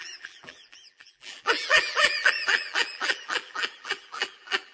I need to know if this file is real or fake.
fake